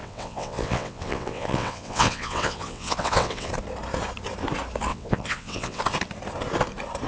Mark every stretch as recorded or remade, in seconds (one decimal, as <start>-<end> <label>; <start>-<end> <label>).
0.0-3.5 remade; 3.5-4.9 recorded; 4.9-5.8 remade; 5.8-7.1 recorded